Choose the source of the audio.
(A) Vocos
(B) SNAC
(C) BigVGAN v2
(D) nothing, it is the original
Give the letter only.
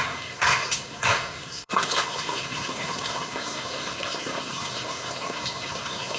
B